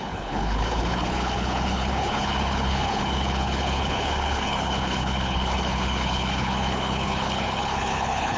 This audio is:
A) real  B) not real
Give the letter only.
B